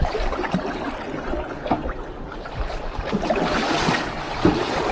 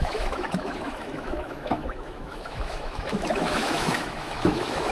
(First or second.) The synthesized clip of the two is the second